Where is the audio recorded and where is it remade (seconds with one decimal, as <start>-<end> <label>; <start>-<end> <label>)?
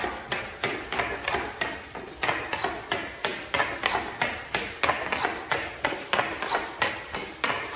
0.0-7.8 recorded